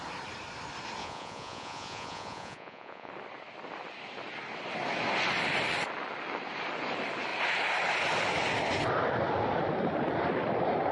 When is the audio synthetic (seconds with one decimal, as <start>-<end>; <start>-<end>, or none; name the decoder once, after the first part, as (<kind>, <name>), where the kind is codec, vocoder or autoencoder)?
1.0-3.1 (vocoder, Vocos)